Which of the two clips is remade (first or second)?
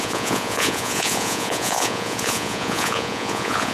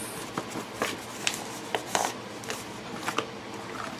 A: first